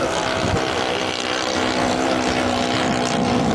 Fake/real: real